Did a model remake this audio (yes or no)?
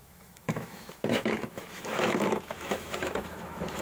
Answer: yes